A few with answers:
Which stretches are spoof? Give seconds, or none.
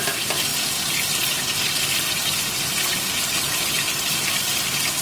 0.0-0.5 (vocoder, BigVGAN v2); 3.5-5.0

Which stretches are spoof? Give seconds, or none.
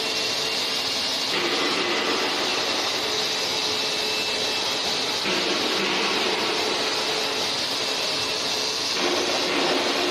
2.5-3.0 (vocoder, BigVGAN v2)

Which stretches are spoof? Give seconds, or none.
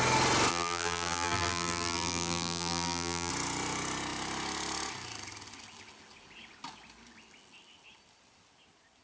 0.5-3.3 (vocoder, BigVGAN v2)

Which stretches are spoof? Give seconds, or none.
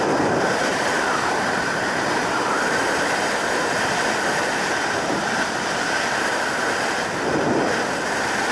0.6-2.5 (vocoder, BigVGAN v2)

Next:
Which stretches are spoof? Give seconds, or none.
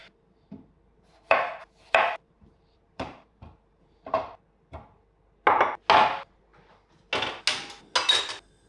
0.0-4.1 (vocoder, BigVGAN v2)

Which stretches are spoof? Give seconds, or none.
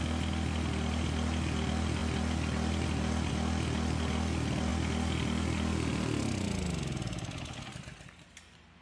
none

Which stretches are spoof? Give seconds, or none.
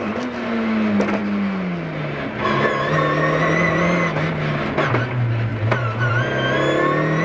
none